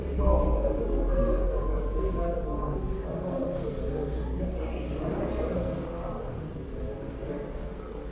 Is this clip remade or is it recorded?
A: remade